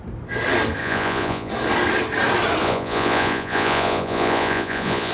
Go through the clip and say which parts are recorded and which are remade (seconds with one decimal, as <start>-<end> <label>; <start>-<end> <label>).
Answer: 0.0-0.8 recorded; 0.8-1.5 remade; 1.5-2.6 recorded; 2.6-5.1 remade